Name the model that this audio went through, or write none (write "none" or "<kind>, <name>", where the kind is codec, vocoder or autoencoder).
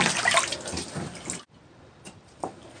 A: none